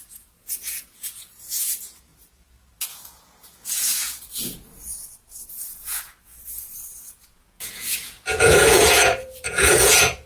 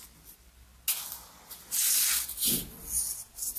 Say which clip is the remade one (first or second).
first